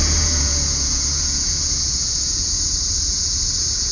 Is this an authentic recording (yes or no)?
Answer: no